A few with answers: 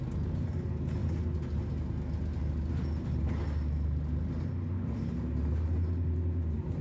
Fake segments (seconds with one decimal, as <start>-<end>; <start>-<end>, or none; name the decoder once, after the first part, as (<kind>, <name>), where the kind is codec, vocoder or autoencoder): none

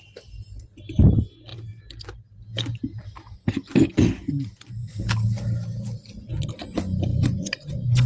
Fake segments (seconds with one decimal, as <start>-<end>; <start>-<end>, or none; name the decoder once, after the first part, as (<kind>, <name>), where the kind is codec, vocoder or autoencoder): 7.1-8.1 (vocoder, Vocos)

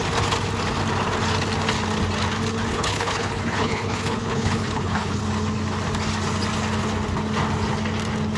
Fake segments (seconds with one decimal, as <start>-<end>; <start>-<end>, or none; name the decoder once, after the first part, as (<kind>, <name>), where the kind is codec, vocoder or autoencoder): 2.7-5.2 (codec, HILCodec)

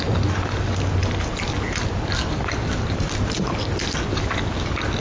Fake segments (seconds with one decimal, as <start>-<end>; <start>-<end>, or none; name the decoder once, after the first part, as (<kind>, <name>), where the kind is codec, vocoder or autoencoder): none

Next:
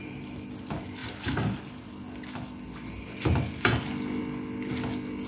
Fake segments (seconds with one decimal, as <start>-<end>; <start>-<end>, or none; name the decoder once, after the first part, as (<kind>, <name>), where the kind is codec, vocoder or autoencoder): none

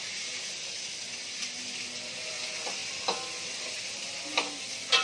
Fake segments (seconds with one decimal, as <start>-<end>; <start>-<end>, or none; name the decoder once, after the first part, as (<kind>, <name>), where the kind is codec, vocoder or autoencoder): none

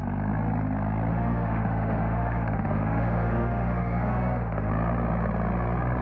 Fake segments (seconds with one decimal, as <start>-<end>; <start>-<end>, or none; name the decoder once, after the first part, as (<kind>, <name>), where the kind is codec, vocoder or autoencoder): 1.1-4.7 (autoencoder, DAC-VAE)

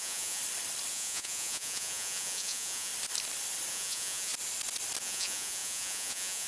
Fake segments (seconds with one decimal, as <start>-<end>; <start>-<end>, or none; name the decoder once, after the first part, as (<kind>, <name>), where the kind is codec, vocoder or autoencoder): 0.0-0.4 (vocoder, Vocos); 0.9-2.9; 3.7-4.3; 5.0-6.5